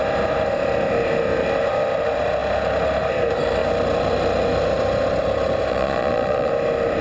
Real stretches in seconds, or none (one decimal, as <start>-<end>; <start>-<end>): 0.0-5.7; 6.5-7.0